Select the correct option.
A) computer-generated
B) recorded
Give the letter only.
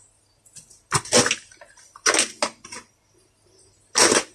B